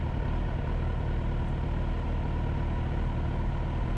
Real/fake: real